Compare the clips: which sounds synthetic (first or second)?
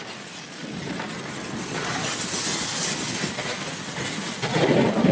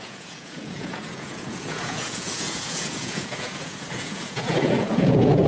second